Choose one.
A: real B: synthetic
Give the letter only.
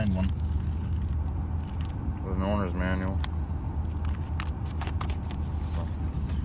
A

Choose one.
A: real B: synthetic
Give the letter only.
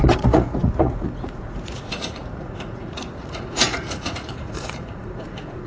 B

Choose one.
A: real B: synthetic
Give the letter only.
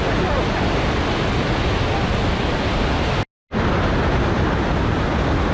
A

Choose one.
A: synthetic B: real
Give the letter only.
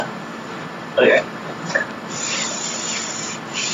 A